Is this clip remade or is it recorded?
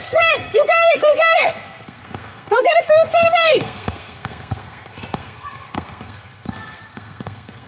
remade